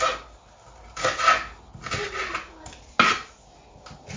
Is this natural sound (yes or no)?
yes